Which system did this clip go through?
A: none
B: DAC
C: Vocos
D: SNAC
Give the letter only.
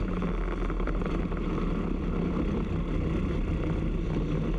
A